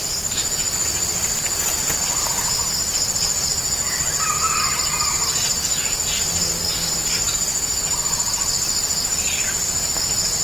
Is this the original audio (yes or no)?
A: yes